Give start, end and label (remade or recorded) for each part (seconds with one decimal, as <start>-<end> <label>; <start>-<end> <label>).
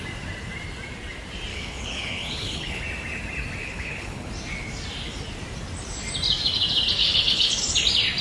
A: 0.0-1.5 recorded; 1.5-2.8 remade; 2.8-3.6 recorded; 3.6-4.3 remade; 4.3-7.0 recorded; 7.0-7.6 remade; 7.6-8.2 recorded